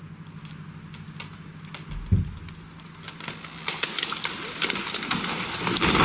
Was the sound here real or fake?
real